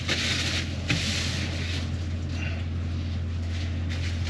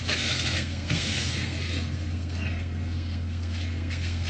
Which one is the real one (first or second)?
first